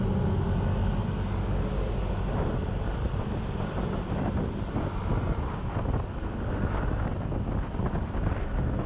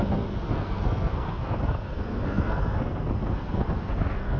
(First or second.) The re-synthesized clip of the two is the second